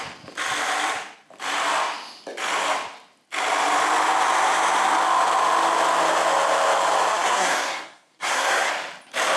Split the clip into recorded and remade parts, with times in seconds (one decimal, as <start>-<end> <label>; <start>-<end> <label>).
0.0-7.1 recorded; 7.1-8.7 remade; 8.7-9.4 recorded